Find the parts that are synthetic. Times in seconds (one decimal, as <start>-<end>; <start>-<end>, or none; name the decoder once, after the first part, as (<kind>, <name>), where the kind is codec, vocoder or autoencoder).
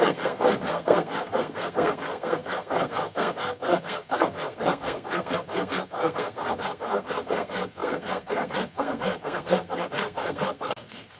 0.0-11.2 (codec, SNAC)